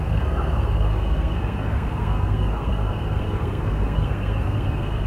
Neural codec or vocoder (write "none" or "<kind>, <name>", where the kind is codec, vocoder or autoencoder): codec, SNAC